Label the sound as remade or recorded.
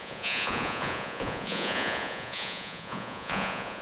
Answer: remade